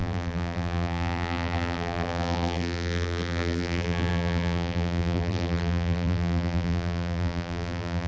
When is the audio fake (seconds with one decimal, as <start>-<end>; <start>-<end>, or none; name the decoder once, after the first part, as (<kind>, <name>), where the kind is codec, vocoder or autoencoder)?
0.0-8.1 (vocoder, BigVGAN v2)